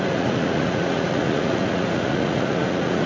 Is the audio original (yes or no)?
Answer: no